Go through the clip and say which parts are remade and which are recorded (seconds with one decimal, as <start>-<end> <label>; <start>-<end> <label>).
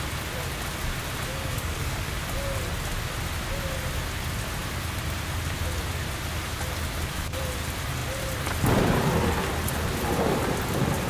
0.0-1.3 recorded; 1.3-2.1 remade; 2.1-11.1 recorded